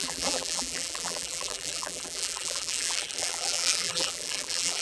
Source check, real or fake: fake